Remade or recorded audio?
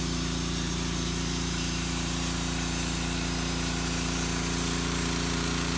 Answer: remade